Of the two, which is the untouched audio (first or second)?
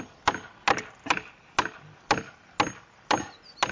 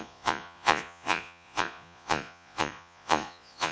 first